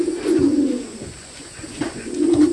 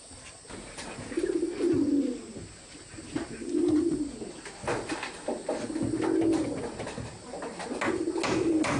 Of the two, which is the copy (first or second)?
first